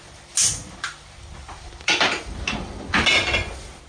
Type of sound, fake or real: real